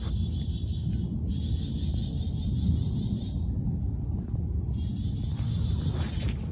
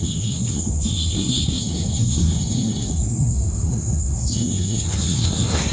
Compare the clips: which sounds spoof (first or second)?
second